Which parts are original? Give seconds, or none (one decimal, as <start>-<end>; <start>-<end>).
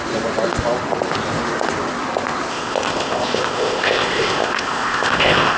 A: 0.0-2.5